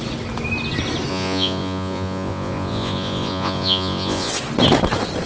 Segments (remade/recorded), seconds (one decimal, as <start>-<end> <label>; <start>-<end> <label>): 0.0-1.1 recorded; 1.1-4.3 remade; 4.3-5.3 recorded